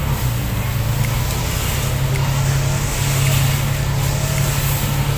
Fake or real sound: real